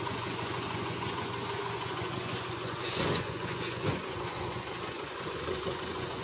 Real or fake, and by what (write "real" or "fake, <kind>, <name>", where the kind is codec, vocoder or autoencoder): fake, vocoder, Vocos